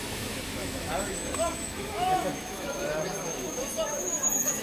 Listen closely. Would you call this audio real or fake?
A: fake